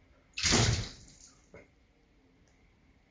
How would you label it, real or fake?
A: real